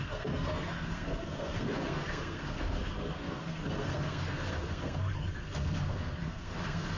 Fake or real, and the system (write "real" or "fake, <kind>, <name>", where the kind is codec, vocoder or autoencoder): fake, codec, SNAC